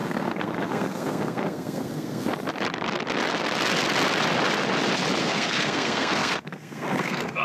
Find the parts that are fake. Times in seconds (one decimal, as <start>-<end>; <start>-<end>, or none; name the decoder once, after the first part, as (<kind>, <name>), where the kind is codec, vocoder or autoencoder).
0.0-2.3 (codec, SNAC); 5.2-7.4